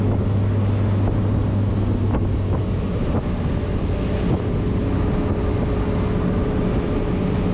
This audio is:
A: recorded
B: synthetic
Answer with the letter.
A